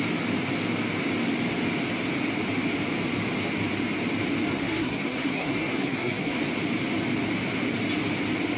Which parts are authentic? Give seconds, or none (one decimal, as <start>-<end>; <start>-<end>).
0.0-4.5; 6.4-8.6